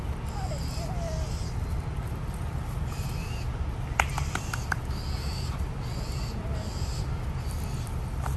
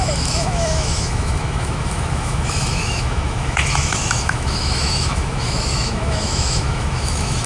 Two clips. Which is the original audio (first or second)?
first